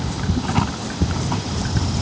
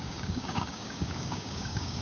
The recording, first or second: first